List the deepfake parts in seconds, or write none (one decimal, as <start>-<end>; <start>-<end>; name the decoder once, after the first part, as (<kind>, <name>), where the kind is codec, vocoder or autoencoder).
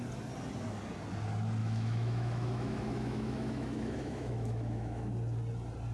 1.6-5.1 (autoencoder, DAC-VAE)